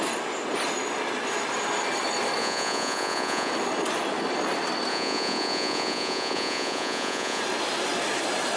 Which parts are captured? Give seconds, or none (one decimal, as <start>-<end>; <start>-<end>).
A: 0.0-2.4; 3.5-4.9; 7.4-8.6